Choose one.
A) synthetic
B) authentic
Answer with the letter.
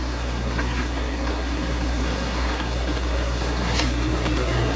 A